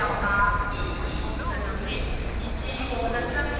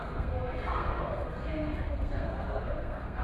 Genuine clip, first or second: first